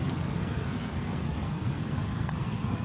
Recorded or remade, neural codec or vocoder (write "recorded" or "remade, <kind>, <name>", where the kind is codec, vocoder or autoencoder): remade, codec, SNAC